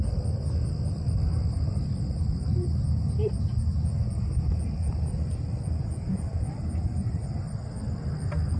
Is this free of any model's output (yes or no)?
yes